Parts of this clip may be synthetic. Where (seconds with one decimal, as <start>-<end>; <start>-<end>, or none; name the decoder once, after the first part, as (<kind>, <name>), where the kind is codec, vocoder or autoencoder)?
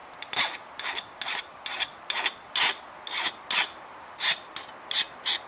none